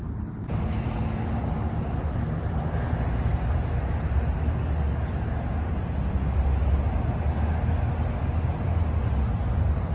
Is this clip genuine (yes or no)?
yes